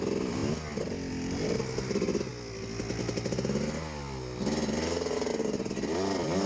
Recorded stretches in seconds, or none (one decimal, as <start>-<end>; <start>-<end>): 0.0-6.5